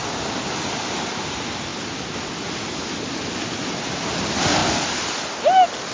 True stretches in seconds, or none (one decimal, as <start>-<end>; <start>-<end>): 0.0-1.7; 2.3-5.9